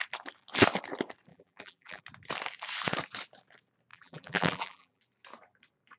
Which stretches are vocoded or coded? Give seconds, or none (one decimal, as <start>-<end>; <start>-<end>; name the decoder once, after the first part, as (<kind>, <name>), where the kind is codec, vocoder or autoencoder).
1.3-2.0 (vocoder, BigVGAN v2); 3.9-5.0